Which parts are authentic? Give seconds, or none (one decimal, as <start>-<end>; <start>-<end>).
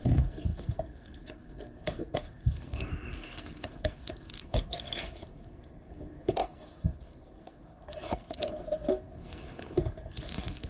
none